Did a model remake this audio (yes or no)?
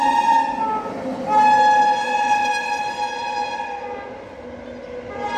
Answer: no